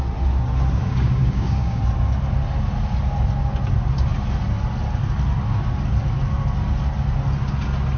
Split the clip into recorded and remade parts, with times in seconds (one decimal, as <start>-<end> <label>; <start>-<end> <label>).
0.0-0.8 recorded; 0.8-1.8 remade; 1.8-8.0 recorded